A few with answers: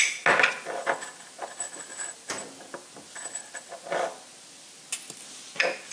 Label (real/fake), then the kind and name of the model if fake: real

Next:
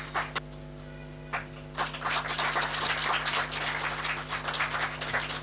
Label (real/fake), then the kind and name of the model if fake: real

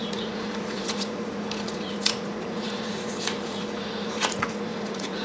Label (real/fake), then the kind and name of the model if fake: fake, vocoder, Vocos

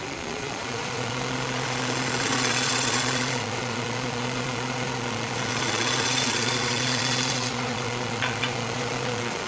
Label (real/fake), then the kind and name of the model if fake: fake, vocoder, Vocos